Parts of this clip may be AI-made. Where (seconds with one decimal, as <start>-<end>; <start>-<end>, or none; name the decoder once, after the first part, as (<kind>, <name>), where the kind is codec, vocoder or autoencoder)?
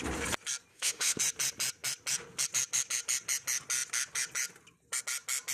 0.7-1.2 (autoencoder, DAC-VAE)